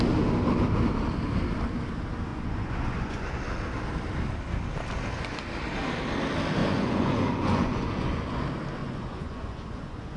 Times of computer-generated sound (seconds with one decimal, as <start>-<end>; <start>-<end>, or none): 2.3-3.4; 6.6-8.4; 8.8-10.2